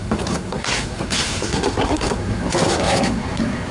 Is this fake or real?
fake